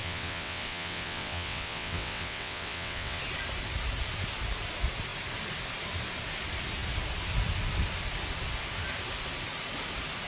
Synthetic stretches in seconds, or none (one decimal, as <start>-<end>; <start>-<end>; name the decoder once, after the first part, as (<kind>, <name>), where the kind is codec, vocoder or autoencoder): 0.0-3.2 (vocoder, WaveNeXt)